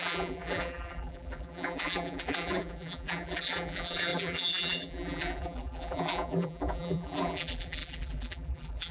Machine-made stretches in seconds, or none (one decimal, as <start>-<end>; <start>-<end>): 0.0-8.9